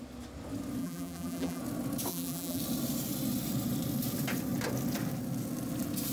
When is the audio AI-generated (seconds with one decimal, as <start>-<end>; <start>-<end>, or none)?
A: 0.8-1.6; 2.1-2.6